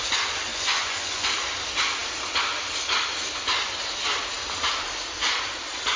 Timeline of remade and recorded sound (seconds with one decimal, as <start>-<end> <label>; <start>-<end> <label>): 0.0-0.5 recorded; 0.5-1.3 remade; 1.3-6.0 recorded